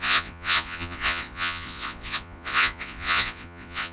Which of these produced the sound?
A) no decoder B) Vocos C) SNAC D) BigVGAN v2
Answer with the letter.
B